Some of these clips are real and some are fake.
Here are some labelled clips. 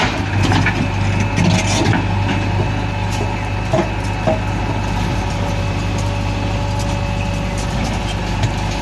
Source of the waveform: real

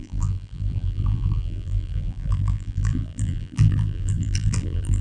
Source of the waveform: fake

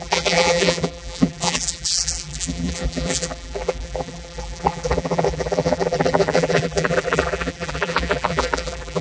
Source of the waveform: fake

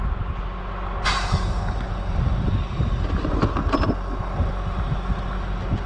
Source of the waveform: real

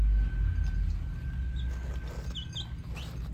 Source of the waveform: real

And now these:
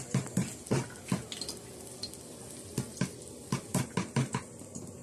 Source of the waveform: real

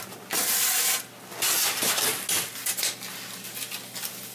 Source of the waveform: real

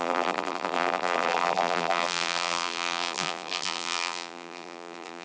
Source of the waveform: fake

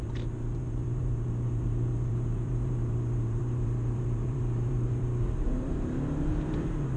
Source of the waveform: fake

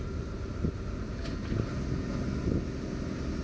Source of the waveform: real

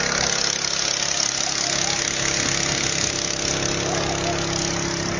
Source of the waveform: real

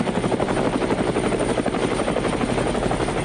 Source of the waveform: fake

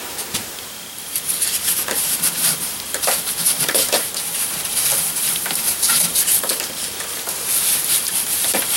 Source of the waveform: fake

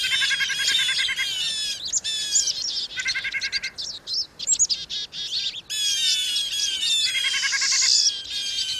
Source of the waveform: real